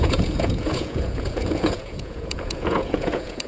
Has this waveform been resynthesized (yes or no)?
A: yes